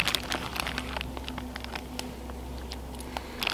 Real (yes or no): yes